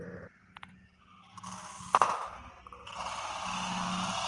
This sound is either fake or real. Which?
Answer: real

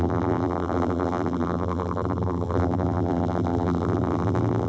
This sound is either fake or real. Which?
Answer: fake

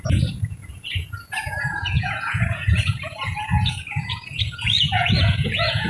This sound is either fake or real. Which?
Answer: fake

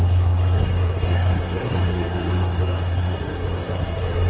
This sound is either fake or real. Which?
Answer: fake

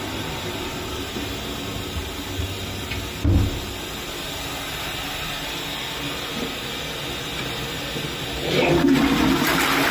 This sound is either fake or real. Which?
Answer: real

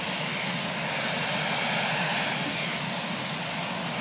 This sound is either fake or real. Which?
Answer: real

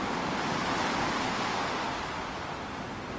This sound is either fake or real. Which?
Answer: real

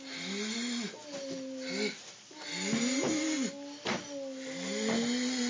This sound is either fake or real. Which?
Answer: real